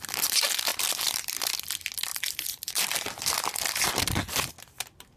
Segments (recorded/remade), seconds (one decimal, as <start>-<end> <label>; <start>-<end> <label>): 0.0-0.7 recorded; 0.7-1.5 remade; 1.5-2.1 recorded; 2.1-4.3 remade; 4.3-5.2 recorded